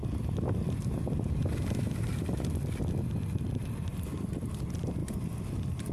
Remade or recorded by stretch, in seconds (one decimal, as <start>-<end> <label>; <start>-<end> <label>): 0.0-5.9 recorded